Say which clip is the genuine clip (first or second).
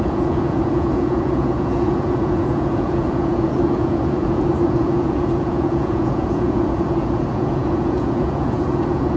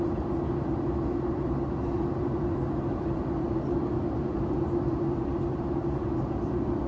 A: second